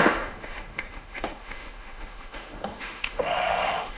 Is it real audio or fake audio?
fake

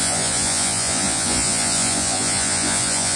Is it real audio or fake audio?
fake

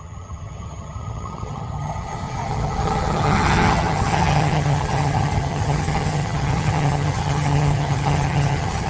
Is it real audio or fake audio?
fake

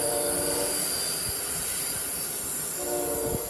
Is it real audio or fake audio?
real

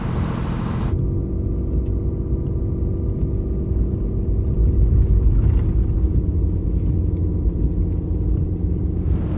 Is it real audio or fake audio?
real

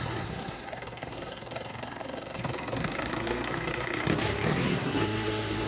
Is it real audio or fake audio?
fake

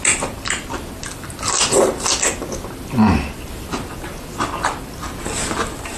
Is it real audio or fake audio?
real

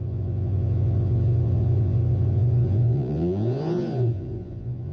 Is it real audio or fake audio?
fake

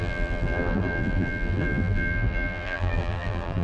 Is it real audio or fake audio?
fake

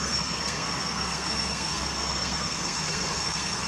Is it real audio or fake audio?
fake